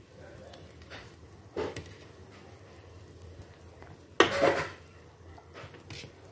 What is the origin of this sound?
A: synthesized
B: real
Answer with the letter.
B